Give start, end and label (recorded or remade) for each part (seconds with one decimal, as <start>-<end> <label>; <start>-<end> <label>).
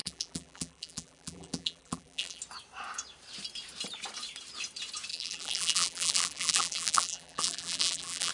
0.0-2.4 remade; 2.4-5.1 recorded; 5.1-8.3 remade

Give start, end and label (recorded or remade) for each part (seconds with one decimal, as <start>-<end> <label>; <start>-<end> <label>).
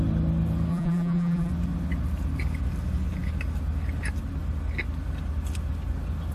0.0-0.7 recorded; 0.7-1.5 remade; 1.5-6.3 recorded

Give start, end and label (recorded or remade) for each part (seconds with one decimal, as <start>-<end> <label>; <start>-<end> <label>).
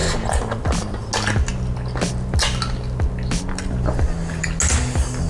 0.0-1.1 remade; 1.1-5.3 recorded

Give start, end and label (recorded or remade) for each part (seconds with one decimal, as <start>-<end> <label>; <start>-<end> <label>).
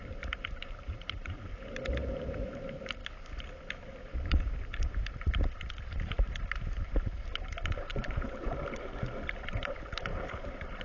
0.0-3.0 remade; 3.0-3.8 recorded; 3.8-10.1 remade; 10.1-10.8 recorded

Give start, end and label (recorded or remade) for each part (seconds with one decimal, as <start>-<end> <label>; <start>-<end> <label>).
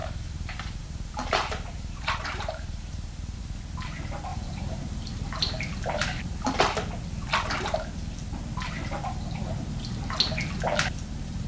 0.0-3.4 remade; 3.4-4.3 recorded; 4.3-6.6 remade; 6.6-11.5 recorded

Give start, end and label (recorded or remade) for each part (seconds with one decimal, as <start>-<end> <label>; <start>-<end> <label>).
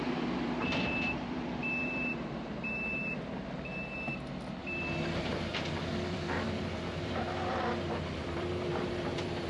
0.0-9.5 remade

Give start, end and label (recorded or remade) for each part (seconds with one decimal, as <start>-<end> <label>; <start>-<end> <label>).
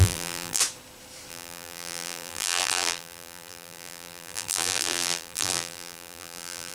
0.0-0.6 remade; 0.6-1.3 recorded; 1.3-6.7 remade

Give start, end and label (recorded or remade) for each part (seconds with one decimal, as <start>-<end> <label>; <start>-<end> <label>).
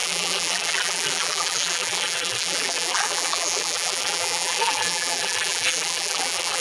0.0-6.6 remade